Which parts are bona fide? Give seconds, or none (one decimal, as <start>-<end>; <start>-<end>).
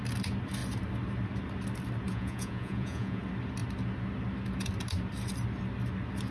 0.0-2.1; 3.2-6.3